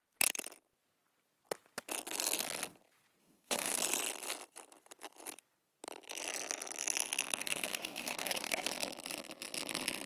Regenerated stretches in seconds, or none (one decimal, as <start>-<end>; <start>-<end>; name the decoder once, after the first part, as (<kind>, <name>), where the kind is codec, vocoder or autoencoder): 3.2-3.8 (codec, DAC); 7.4-8.7